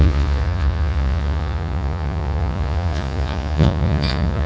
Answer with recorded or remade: remade